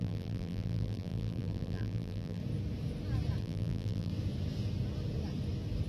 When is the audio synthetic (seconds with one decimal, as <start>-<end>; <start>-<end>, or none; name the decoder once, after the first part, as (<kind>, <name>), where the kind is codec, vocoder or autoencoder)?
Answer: 0.0-2.4 (vocoder, BigVGAN v2); 3.4-4.1